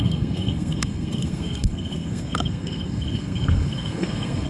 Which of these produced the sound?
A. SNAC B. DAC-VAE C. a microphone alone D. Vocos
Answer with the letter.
A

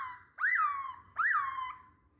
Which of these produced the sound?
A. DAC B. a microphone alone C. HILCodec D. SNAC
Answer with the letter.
B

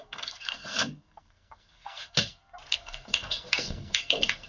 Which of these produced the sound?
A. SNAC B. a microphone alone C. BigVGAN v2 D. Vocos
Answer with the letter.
A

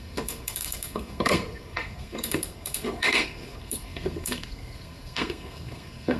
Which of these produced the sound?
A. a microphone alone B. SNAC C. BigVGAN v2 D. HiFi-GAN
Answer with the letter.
B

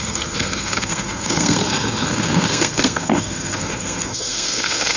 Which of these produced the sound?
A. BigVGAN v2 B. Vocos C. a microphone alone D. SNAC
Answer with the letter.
D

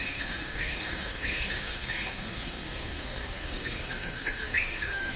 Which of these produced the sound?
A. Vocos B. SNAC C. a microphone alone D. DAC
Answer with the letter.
B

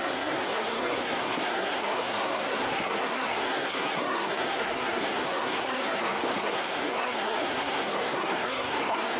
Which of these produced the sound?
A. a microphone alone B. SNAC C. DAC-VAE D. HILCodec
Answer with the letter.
B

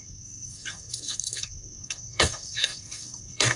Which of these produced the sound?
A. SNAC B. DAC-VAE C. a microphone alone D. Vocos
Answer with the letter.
A